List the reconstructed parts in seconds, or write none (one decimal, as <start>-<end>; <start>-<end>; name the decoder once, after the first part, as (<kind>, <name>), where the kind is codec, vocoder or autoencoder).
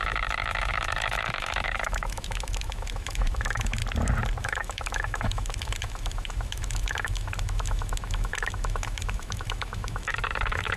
0.0-3.8 (autoencoder, DAC-VAE); 4.4-10.8